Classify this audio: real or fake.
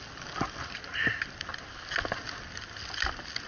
real